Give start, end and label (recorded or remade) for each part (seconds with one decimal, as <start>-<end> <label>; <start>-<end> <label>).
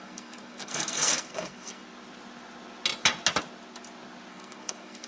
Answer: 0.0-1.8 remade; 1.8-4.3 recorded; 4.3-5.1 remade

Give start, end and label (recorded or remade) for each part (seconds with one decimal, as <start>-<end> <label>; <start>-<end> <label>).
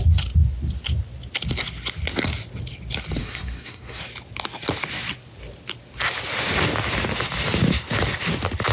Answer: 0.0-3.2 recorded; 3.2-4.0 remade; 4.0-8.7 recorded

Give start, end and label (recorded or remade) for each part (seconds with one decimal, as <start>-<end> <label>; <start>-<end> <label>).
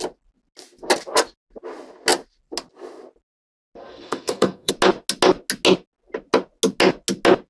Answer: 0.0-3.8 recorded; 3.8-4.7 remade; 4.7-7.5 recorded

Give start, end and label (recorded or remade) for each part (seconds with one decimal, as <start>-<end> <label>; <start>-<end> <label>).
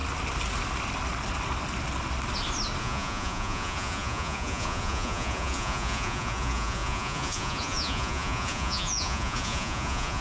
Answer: 0.0-2.8 recorded; 2.8-10.2 remade